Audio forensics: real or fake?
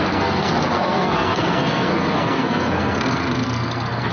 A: fake